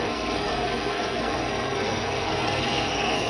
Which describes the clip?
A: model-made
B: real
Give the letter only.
A